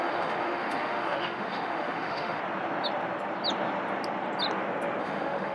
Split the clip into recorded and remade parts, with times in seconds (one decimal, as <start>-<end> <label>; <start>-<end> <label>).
0.0-2.4 remade; 2.4-5.0 recorded; 5.0-5.5 remade